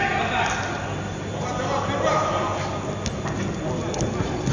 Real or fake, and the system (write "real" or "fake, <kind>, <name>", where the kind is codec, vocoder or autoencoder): real